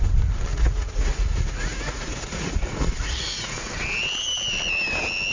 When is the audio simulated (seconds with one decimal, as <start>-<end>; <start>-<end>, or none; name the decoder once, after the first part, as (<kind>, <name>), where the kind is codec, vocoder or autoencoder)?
0.5-3.7 (vocoder, Vocos)